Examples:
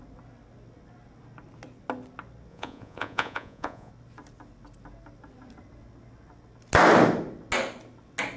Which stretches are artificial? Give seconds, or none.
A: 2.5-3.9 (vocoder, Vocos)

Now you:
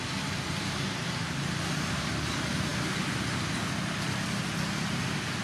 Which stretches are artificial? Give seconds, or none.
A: none

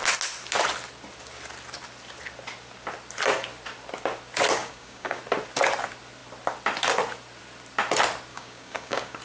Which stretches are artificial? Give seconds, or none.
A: 4.6-5.2 (codec, DAC); 8.3-9.2

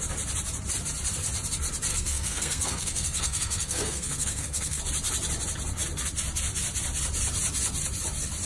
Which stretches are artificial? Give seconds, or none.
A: 1.9-4.8 (codec, SNAC)